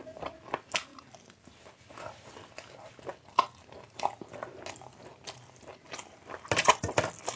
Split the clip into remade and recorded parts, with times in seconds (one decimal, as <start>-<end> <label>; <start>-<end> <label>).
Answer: 0.0-7.4 recorded